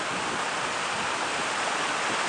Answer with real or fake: real